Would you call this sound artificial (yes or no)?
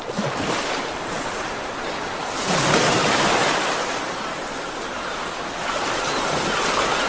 no